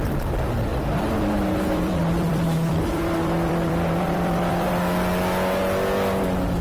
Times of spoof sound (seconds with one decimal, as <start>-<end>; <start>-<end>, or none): 0.7-4.7